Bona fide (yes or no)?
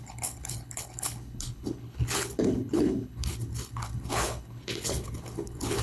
no